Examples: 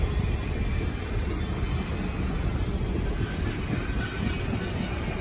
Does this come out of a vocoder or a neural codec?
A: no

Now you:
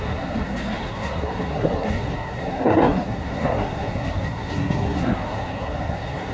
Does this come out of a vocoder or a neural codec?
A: yes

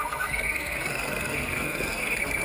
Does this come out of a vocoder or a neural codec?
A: yes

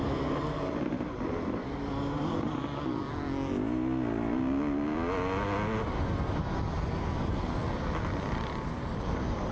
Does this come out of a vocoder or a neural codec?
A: no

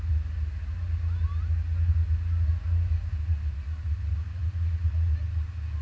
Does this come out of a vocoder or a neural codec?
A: no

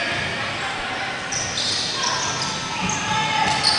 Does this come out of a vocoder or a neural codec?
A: no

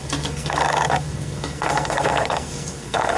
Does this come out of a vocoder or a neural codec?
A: yes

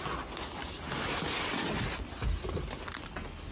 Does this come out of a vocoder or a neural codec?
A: no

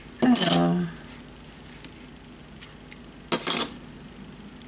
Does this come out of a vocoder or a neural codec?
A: no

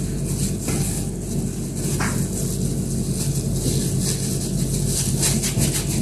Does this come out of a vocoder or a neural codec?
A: no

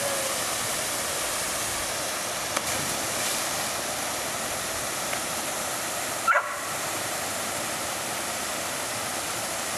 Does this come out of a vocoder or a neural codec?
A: no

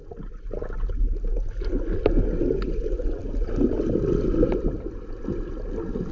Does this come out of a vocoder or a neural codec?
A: no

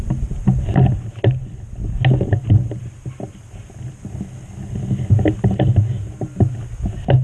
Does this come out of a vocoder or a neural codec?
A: no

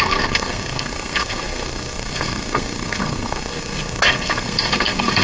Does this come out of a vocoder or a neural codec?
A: yes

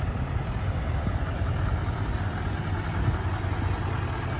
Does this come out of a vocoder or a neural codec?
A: no